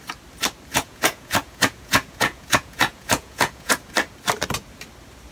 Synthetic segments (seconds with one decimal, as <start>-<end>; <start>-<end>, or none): 0.7-3.9